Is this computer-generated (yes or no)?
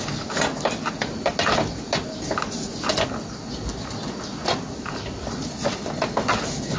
no